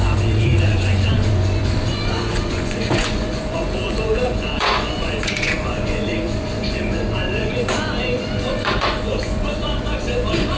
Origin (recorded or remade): remade